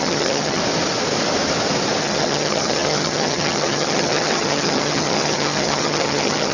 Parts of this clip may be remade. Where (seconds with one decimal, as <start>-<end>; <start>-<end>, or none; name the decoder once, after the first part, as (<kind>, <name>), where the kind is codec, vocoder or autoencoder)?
0.0-0.6 (vocoder, HiFi-GAN); 2.0-6.5

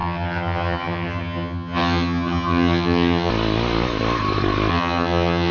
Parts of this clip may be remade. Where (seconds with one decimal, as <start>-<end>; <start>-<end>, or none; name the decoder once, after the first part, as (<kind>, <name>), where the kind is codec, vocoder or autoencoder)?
0.0-3.3 (vocoder, HiFi-GAN); 4.7-5.5

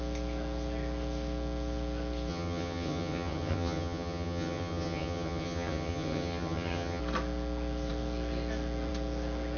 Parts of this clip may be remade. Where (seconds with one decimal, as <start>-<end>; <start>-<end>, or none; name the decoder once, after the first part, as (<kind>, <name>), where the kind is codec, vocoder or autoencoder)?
2.3-7.0 (vocoder, HiFi-GAN)

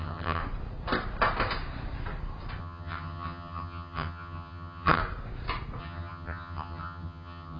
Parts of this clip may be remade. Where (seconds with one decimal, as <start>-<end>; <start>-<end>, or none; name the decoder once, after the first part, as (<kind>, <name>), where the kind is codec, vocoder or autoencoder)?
0.0-0.4 (vocoder, HiFi-GAN); 2.6-5.0; 5.8-7.6

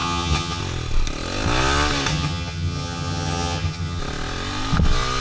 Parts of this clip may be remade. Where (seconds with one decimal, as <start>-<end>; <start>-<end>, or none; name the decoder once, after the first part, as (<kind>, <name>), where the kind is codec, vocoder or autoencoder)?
0.0-0.6 (vocoder, HiFi-GAN); 2.1-4.0

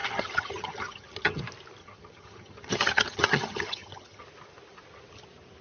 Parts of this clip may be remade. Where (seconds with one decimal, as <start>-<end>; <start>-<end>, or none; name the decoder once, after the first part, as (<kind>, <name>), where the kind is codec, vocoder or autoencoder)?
0.0-1.4 (vocoder, HiFi-GAN); 1.8-4.2

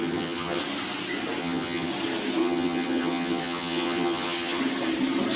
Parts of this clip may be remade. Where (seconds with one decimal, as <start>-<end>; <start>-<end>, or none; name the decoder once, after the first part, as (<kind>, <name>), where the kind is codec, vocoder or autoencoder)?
0.0-0.6 (vocoder, HiFi-GAN); 1.4-1.9; 2.4-4.6

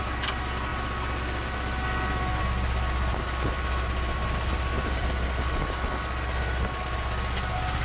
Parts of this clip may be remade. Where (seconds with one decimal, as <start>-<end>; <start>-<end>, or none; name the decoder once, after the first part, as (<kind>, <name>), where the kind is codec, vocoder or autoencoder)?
none